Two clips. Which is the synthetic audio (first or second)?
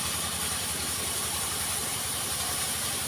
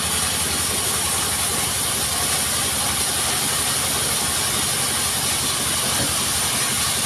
first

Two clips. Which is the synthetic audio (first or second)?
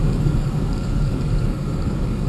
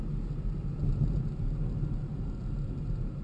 first